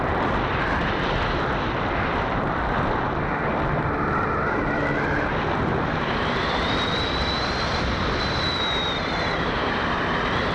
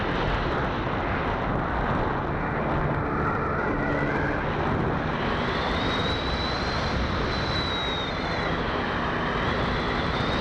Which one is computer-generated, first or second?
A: first